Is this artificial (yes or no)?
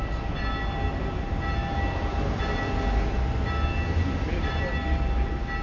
no